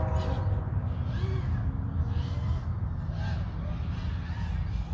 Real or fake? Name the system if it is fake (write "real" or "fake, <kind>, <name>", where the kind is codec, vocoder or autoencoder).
real